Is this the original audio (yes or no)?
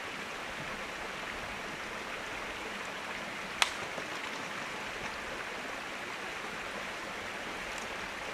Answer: yes